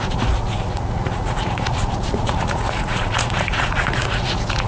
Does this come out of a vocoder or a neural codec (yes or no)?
yes